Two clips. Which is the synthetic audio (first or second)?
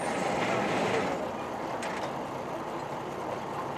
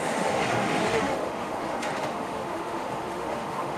second